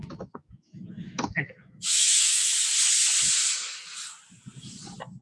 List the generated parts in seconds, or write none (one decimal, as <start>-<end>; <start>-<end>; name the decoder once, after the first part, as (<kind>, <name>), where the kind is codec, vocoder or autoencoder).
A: 0.0-2.5 (autoencoder, DAC-VAE)